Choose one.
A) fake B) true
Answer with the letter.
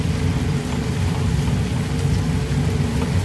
B